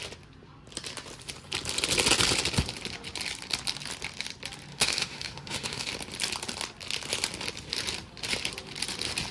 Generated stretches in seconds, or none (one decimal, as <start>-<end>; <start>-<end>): 4.7-5.9